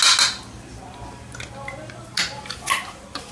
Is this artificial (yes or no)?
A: no